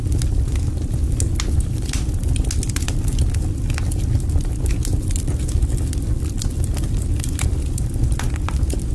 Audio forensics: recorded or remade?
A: recorded